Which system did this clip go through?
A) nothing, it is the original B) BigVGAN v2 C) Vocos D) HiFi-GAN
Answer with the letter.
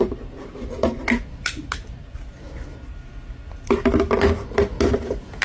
A